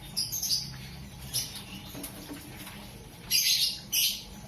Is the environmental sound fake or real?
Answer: fake